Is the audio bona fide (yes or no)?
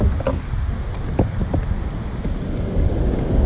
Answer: yes